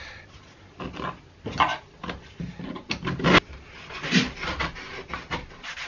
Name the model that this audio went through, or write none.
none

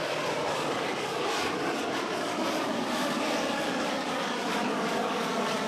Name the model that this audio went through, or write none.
codec, DAC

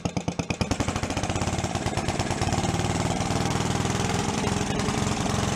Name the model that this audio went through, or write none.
vocoder, BigVGAN v2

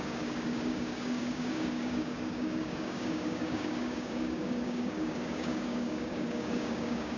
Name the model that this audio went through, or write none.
codec, DAC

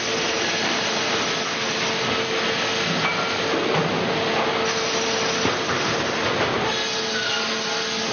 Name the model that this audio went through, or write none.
none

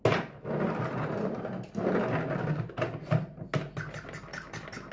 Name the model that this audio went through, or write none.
none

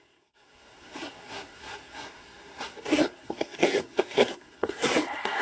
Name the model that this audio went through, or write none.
codec, SNAC